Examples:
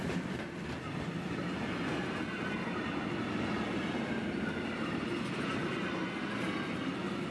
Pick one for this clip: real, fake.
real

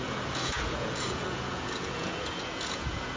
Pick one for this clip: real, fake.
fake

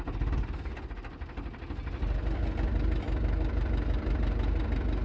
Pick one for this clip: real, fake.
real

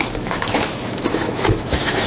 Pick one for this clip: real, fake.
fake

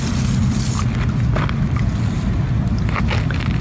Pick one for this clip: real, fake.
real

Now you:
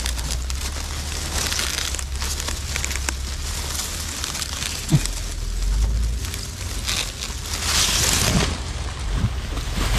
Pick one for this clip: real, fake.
real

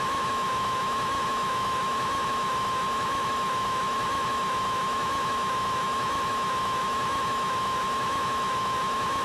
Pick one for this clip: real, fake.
fake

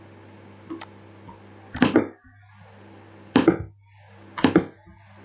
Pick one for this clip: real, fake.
real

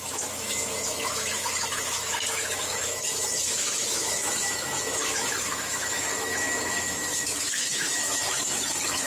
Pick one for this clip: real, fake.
fake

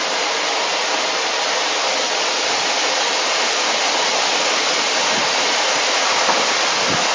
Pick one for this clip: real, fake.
real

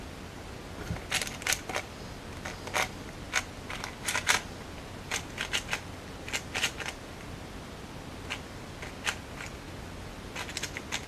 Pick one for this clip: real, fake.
real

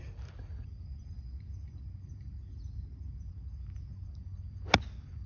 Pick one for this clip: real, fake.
real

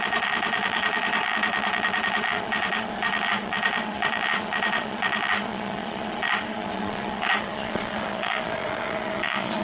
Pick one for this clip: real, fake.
fake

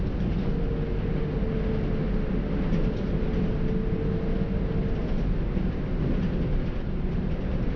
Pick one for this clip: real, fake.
real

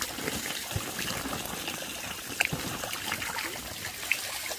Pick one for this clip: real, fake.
real